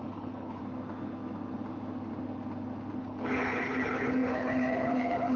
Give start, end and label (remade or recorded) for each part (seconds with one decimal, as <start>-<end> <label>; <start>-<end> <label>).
0.0-0.6 remade; 0.6-3.0 recorded; 3.0-5.4 remade